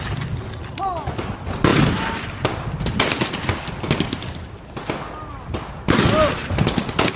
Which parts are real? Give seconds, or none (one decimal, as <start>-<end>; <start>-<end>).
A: 0.0-7.2